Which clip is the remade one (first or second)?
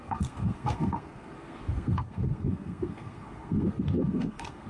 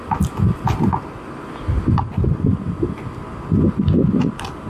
first